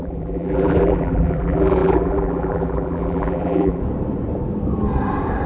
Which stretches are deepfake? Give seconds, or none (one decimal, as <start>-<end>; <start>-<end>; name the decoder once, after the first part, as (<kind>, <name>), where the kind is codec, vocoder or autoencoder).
0.0-3.8 (vocoder, BigVGAN v2)